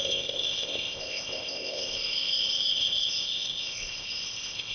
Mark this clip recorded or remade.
remade